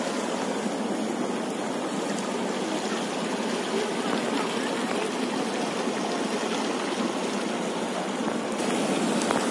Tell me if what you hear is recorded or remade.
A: recorded